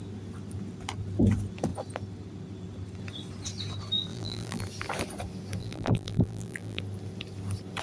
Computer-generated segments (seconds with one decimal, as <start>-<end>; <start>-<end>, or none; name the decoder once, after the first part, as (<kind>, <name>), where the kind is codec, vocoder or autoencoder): 4.1-4.6 (vocoder, BigVGAN v2); 5.6-6.8